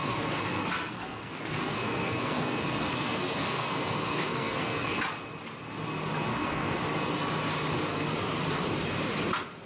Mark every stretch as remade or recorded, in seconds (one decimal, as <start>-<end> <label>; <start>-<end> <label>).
0.0-5.0 remade; 5.0-6.3 recorded; 6.3-6.8 remade; 6.8-9.7 recorded